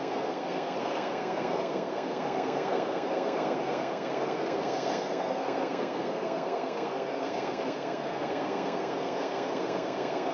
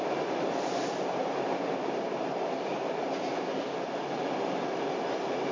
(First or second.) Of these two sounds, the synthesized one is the first